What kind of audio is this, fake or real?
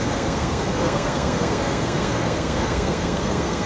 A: fake